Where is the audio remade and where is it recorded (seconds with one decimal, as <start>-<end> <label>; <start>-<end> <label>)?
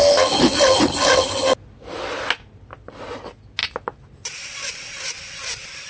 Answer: 0.0-5.9 recorded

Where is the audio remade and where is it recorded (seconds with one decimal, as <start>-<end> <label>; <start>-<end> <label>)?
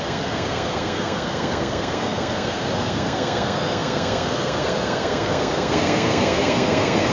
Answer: 0.0-7.1 remade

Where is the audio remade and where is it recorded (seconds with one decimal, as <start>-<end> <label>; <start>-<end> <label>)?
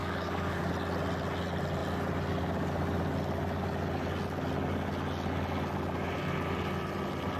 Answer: 0.0-0.7 remade; 0.7-7.4 recorded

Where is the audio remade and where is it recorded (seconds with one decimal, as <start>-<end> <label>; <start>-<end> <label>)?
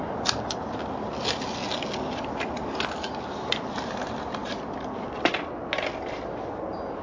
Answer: 0.0-7.0 recorded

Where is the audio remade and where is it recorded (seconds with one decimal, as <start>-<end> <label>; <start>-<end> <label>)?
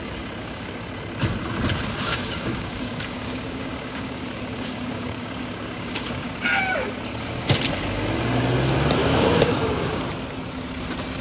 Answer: 0.0-0.4 recorded; 0.4-0.9 remade; 0.9-2.1 recorded; 2.1-6.6 remade; 6.6-9.0 recorded; 9.0-10.0 remade; 10.0-11.2 recorded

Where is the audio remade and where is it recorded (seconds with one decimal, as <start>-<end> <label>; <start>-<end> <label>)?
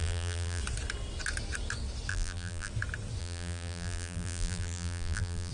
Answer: 0.0-0.6 remade; 0.6-2.1 recorded; 2.1-2.7 remade; 2.7-3.2 recorded; 3.2-5.5 remade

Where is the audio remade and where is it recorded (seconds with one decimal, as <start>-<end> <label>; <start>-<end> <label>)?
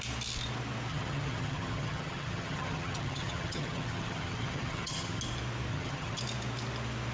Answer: 0.0-0.9 recorded; 0.9-5.2 remade; 5.2-5.7 recorded; 5.7-6.2 remade; 6.2-7.1 recorded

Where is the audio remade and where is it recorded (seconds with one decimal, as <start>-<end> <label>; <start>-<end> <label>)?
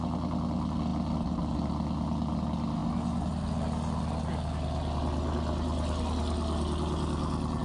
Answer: 0.0-7.6 recorded